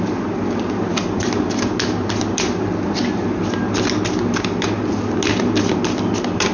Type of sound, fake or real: real